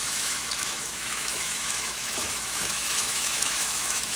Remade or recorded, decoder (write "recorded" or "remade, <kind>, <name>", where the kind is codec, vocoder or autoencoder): remade, autoencoder, DAC-VAE